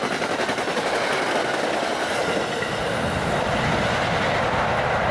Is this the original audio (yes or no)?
yes